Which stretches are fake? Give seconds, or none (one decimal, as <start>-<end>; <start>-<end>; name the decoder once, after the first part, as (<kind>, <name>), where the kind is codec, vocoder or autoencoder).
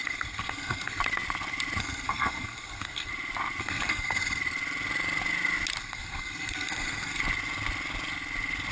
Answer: 0.0-1.0 (codec, SNAC); 1.8-3.1; 3.6-4.4; 5.8-7.2